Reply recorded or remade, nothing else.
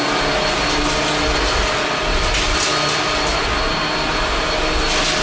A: recorded